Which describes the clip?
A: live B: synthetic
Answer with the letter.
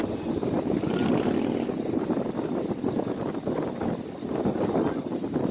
A